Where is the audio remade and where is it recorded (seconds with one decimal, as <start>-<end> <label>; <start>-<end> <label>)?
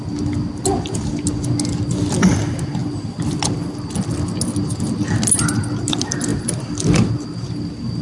0.0-6.3 recorded; 6.3-7.1 remade; 7.1-8.0 recorded